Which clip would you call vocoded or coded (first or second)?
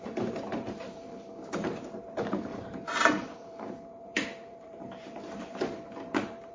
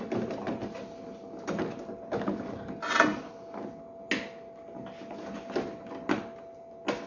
first